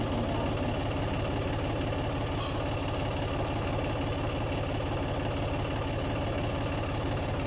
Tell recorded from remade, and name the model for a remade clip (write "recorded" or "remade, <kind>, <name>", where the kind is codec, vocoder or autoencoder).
recorded